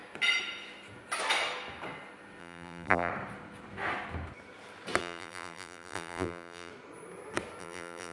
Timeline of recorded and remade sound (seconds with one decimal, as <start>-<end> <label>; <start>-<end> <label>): 0.0-2.4 recorded; 2.4-3.1 remade; 3.1-5.0 recorded; 5.0-6.7 remade; 6.7-7.6 recorded; 7.6-8.1 remade